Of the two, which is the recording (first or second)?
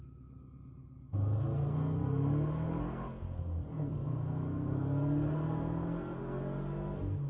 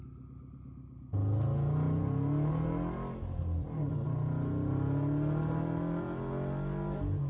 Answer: second